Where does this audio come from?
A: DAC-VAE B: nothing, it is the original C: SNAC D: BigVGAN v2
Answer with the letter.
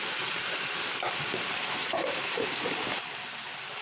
B